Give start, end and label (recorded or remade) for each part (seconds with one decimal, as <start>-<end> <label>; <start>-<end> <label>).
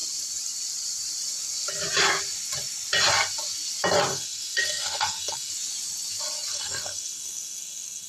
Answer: 0.0-4.1 recorded; 4.1-5.5 remade; 5.5-6.5 recorded; 6.5-8.1 remade